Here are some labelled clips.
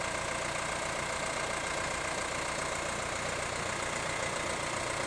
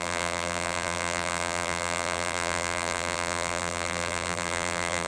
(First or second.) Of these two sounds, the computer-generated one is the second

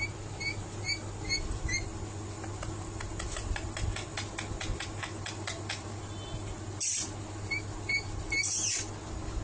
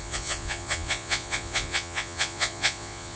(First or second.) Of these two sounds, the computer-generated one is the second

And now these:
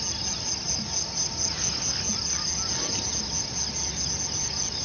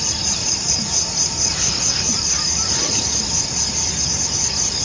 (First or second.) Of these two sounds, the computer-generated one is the second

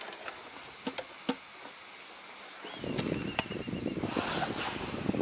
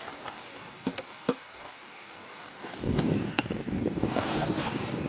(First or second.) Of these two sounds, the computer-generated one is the second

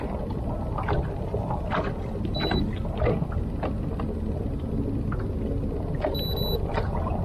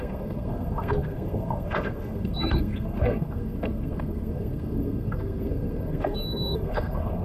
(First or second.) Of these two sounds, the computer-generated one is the second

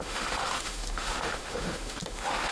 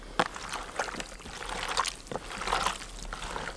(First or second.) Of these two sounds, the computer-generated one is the first